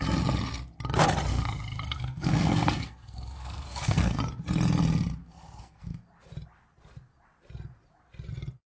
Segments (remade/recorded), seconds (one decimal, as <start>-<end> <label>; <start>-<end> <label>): 0.0-1.3 recorded; 1.3-4.2 remade; 4.2-5.2 recorded; 5.2-6.0 remade; 6.0-8.7 recorded